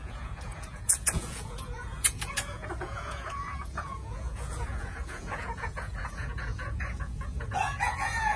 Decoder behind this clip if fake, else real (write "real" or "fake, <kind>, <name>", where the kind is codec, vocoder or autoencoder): fake, vocoder, Vocos